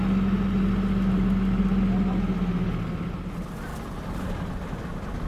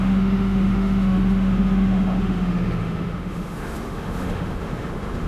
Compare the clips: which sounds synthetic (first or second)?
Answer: second